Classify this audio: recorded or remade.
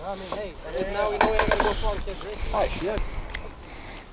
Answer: recorded